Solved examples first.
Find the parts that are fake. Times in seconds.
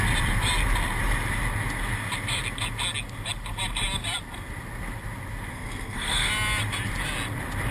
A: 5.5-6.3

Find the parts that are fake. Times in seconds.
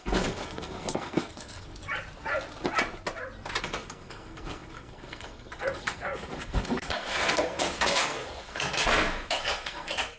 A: 0.0-1.8; 3.6-10.2